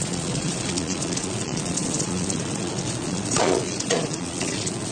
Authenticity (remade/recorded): remade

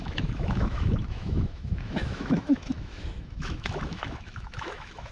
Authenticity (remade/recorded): remade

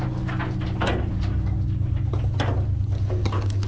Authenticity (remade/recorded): recorded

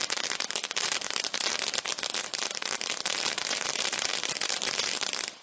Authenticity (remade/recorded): remade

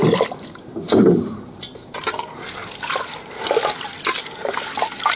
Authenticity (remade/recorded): recorded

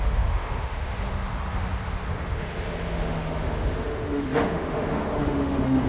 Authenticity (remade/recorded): remade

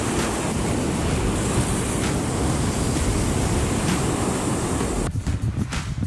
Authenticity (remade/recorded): recorded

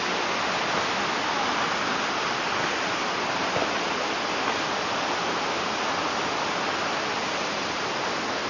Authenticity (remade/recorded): recorded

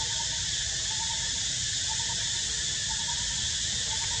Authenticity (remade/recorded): recorded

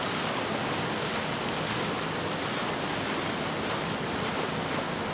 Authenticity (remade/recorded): recorded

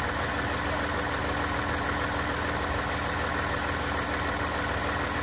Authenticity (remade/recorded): recorded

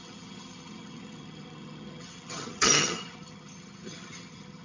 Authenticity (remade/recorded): remade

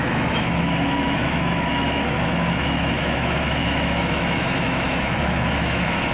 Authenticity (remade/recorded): remade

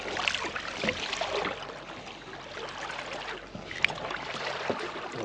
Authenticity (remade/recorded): recorded